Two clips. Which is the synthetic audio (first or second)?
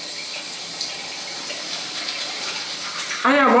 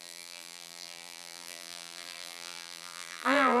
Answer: second